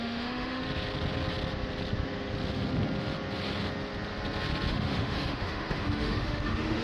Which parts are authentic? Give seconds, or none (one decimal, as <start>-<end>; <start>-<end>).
0.6-4.7